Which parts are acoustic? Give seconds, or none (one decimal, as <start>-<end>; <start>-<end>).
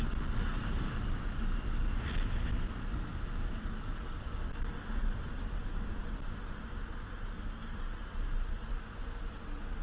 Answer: 0.0-9.8